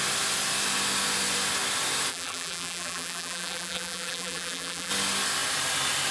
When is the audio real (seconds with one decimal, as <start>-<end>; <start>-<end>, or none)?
0.0-2.1; 4.9-6.1